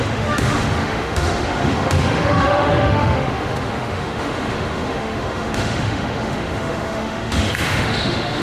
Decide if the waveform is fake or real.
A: fake